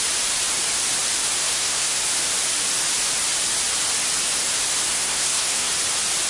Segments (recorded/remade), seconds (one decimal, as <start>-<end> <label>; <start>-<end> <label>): 0.0-1.4 recorded; 1.4-2.0 remade; 2.0-4.9 recorded; 4.9-5.7 remade; 5.7-6.3 recorded